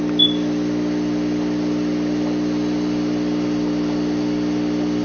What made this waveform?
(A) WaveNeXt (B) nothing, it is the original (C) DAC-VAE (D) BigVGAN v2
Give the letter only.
B